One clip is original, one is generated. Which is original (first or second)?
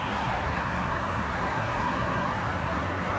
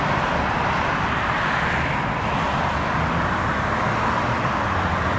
second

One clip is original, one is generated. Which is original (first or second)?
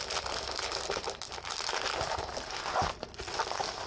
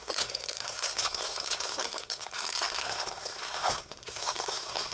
first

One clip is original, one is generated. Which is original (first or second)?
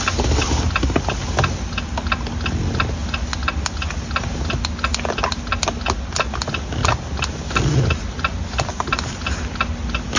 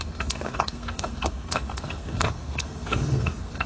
first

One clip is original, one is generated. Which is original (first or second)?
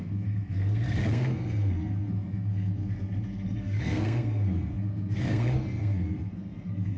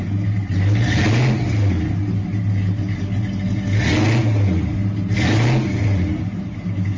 second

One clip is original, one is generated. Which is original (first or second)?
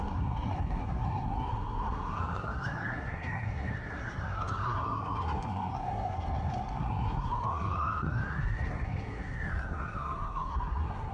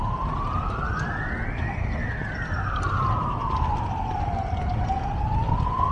second